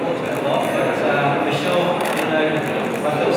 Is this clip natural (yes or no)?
yes